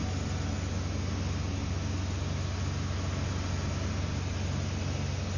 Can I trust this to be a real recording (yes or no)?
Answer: yes